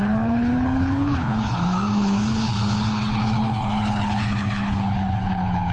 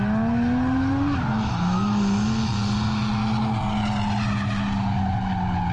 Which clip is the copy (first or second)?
first